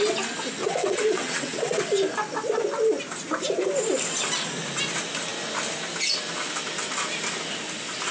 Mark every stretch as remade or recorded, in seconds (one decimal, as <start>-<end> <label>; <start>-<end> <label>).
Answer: 0.0-0.6 recorded; 0.6-1.8 remade; 1.8-8.1 recorded